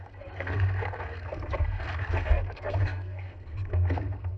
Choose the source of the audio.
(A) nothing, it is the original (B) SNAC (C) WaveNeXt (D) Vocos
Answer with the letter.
B